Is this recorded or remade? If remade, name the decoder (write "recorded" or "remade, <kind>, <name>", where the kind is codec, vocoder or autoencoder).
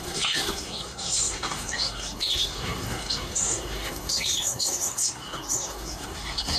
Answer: remade, codec, SNAC